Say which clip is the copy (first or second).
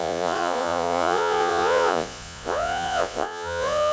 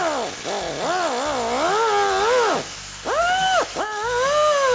first